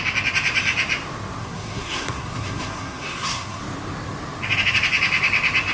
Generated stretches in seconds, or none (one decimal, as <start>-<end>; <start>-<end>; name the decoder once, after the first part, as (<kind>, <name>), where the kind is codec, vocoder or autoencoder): 1.4-3.6 (codec, SNAC)